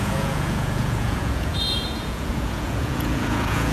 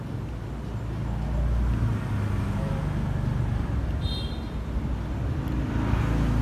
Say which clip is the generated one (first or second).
first